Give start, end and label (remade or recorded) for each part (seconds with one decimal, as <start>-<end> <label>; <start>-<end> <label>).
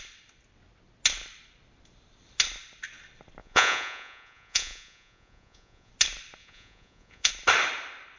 0.0-3.4 recorded; 3.4-5.9 remade; 5.9-6.4 recorded; 6.4-7.3 remade; 7.3-8.2 recorded